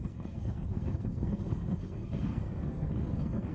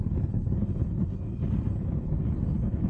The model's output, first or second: first